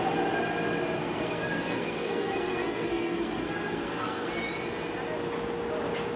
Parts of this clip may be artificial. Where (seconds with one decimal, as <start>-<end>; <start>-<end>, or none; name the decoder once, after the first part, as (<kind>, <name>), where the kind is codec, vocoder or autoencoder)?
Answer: 1.0-4.5 (codec, SNAC)